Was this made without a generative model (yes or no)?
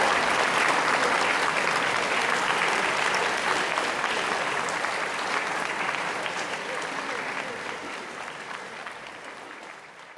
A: no